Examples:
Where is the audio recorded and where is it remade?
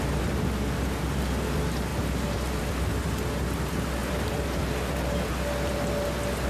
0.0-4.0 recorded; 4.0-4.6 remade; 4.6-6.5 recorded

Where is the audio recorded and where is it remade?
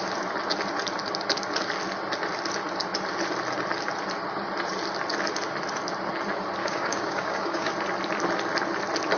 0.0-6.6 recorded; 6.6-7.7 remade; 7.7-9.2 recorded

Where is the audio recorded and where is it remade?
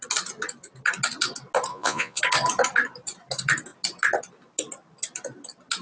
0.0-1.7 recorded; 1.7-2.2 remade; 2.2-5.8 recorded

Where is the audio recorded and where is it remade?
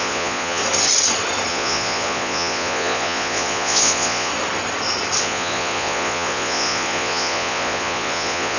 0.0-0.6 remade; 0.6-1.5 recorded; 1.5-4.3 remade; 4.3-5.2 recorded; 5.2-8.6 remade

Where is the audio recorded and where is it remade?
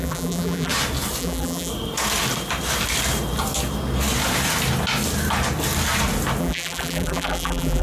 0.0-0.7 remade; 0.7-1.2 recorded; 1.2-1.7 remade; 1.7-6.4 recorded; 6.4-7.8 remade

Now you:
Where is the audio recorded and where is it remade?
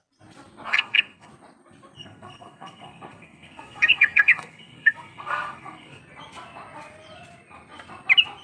0.0-0.7 recorded; 0.7-1.3 remade; 1.3-2.0 recorded; 2.0-6.0 remade; 6.0-8.4 recorded